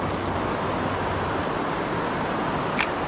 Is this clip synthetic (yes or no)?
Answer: no